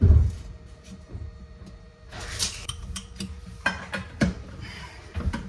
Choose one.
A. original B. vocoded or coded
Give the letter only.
B